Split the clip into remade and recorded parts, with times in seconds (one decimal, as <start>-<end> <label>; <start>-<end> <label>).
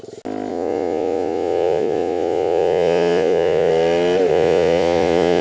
0.0-0.5 recorded; 0.5-3.7 remade; 3.7-4.3 recorded; 4.3-5.4 remade